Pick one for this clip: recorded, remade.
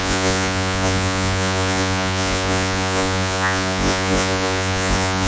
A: remade